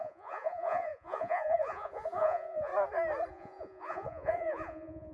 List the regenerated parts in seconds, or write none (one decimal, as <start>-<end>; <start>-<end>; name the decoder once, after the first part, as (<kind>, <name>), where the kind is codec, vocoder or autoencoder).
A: 0.0-2.7 (vocoder, Vocos); 3.3-5.1